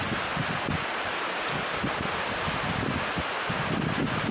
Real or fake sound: real